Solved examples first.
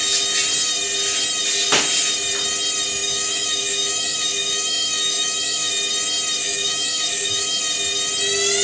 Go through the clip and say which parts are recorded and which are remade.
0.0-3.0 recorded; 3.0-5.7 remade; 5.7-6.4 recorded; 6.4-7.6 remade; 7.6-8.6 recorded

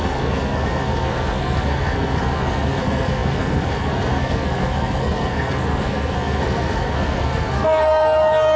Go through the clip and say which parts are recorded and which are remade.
0.0-8.6 remade

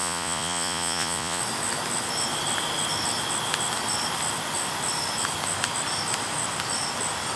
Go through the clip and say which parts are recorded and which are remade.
0.0-1.4 remade; 1.4-7.4 recorded

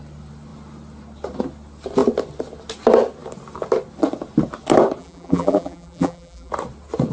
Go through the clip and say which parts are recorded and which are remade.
0.0-5.0 recorded; 5.0-6.5 remade; 6.5-7.1 recorded